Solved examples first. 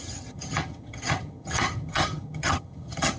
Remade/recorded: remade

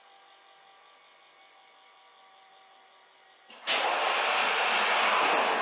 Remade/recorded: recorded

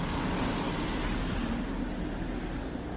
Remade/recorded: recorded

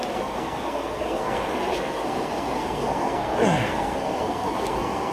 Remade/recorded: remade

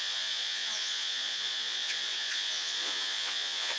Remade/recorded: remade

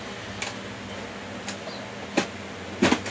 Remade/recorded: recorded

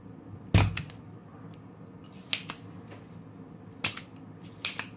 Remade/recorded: recorded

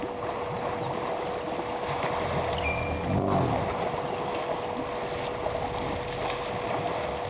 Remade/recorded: recorded